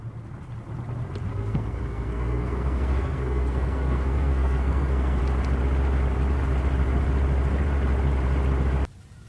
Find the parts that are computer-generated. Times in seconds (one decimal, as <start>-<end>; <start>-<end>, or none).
1.3-5.2